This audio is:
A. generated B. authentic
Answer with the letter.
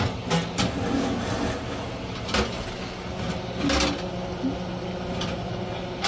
B